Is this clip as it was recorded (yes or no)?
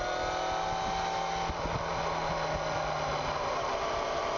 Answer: yes